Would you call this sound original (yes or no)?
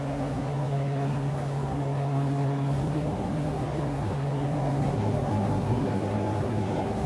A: no